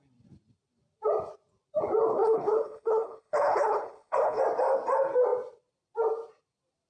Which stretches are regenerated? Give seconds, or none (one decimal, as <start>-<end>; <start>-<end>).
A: 2.1-4.4